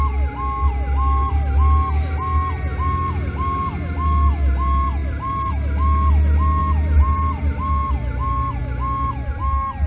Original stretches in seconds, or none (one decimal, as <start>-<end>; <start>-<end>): 0.0-5.0; 5.5-9.9